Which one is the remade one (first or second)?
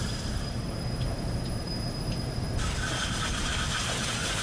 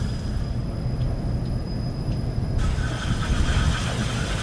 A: first